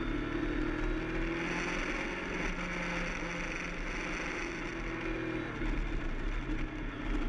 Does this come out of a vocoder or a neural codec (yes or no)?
no